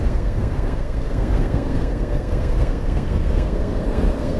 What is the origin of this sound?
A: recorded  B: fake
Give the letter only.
B